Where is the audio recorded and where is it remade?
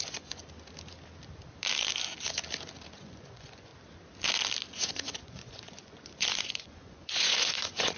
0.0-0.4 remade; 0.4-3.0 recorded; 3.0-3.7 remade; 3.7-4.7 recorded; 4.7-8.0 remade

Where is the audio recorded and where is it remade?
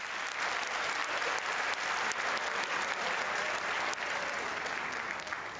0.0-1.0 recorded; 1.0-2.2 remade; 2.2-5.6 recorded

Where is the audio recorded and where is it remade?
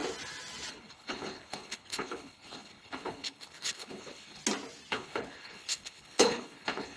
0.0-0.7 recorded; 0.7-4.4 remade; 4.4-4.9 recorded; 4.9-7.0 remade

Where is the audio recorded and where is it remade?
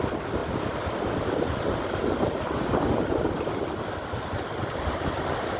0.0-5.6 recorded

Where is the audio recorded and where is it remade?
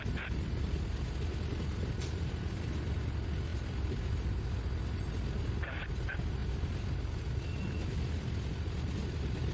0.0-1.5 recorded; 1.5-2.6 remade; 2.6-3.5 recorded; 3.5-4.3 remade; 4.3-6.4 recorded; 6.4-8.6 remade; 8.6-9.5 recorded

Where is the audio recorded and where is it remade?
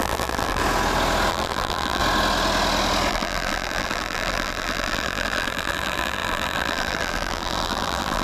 0.0-0.6 remade; 0.6-1.3 recorded; 1.3-2.0 remade; 2.0-3.1 recorded; 3.1-8.2 remade